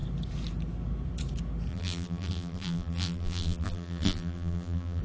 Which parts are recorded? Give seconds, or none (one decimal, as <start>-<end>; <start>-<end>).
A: 0.0-1.7